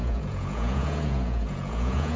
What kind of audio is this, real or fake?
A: fake